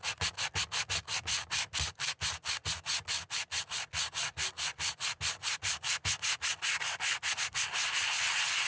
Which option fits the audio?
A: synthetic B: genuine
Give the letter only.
B